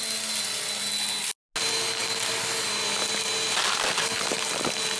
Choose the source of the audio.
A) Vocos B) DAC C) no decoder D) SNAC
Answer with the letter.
C